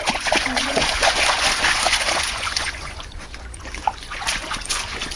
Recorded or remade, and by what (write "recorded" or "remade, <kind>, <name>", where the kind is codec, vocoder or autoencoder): remade, vocoder, Vocos